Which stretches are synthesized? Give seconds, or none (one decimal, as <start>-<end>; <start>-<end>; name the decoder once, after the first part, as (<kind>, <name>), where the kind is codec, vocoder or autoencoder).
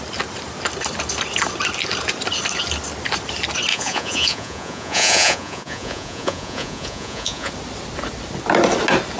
3.7-7.5 (vocoder, Vocos)